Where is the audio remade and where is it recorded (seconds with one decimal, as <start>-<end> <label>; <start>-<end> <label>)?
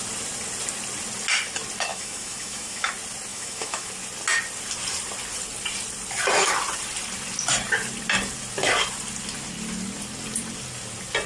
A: 0.0-1.9 recorded; 1.9-2.9 remade; 2.9-3.3 recorded; 3.3-3.9 remade; 3.9-11.3 recorded